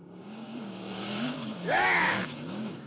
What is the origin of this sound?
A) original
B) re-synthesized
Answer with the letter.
B